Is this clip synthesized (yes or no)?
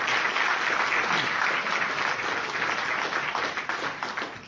no